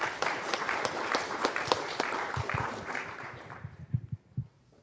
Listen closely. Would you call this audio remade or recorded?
remade